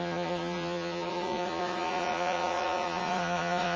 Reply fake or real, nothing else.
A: fake